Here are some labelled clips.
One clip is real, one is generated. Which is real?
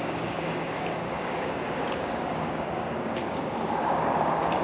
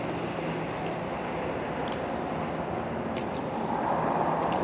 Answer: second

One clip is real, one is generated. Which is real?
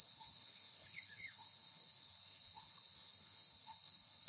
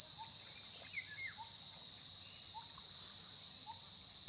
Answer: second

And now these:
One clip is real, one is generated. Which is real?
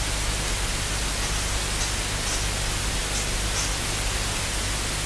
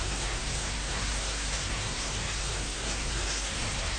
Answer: first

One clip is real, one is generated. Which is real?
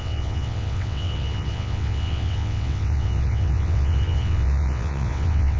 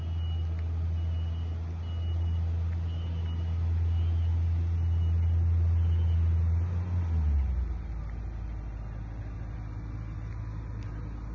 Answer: second